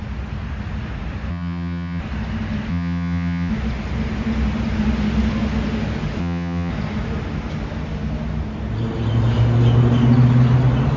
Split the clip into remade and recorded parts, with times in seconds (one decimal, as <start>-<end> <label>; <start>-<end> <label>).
0.0-1.3 recorded; 1.3-2.0 remade; 2.0-2.7 recorded; 2.7-3.5 remade; 3.5-6.2 recorded; 6.2-6.7 remade; 6.7-11.0 recorded